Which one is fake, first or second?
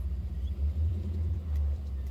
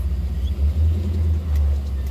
first